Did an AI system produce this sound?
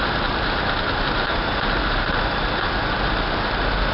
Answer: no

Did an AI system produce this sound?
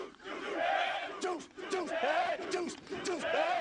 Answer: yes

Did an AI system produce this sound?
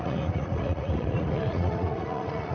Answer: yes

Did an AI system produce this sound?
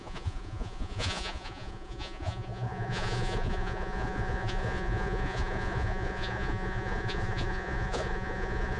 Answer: yes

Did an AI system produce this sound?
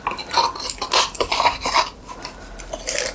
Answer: no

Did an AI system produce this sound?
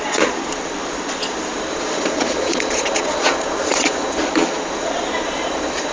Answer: yes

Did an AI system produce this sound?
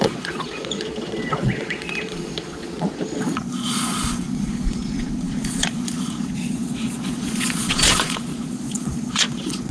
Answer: yes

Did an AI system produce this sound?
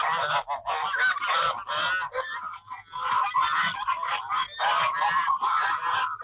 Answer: no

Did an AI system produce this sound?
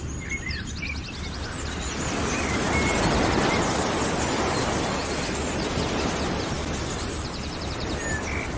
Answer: no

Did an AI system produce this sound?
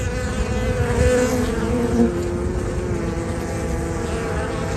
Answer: no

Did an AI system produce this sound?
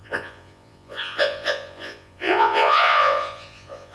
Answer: yes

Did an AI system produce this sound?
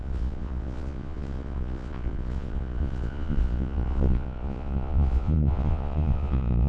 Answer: yes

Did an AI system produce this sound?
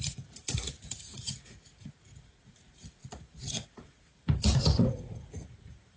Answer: yes